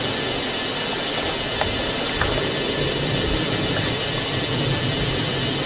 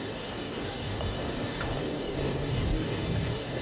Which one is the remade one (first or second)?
second